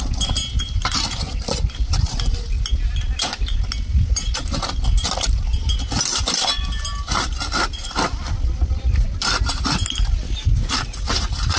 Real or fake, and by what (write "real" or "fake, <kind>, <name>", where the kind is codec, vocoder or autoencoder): real